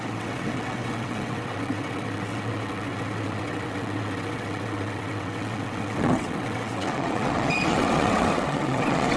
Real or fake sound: fake